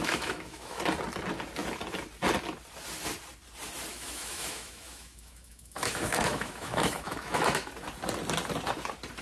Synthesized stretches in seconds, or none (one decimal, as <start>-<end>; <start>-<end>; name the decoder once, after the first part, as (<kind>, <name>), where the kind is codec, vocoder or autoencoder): 0.0-0.8 (autoencoder, DAC-VAE); 3.9-7.7